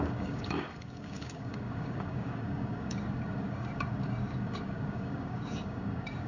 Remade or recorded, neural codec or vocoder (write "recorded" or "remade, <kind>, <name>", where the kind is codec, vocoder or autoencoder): remade, codec, DAC